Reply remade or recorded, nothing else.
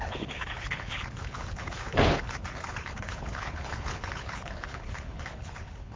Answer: remade